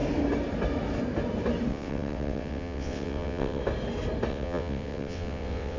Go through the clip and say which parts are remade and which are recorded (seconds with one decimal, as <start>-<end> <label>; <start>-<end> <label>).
0.0-1.7 recorded; 1.7-3.6 remade; 3.6-4.3 recorded; 4.3-5.8 remade